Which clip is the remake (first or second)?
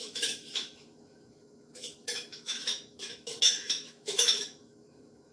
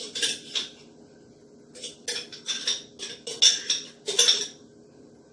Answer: first